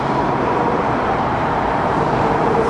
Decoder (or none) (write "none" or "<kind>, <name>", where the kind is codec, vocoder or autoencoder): vocoder, BigVGAN v2